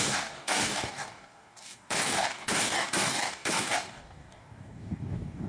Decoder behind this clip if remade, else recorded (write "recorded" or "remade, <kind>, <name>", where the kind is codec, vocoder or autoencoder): remade, codec, DAC